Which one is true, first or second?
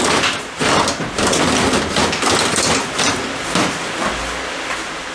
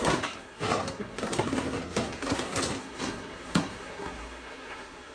first